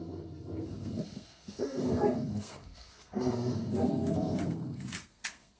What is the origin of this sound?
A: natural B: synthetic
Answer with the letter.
B